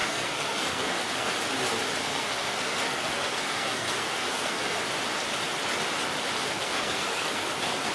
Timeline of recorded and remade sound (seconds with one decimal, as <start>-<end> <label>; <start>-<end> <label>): 0.0-1.3 remade; 1.3-2.0 recorded; 2.0-4.8 remade; 4.8-6.4 recorded; 6.4-7.9 remade